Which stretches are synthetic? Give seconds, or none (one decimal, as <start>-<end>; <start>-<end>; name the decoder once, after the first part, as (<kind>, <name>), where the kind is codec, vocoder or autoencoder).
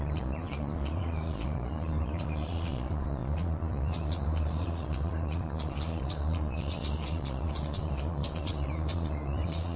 0.0-9.8 (vocoder, Vocos)